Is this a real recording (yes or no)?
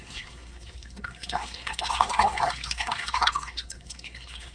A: no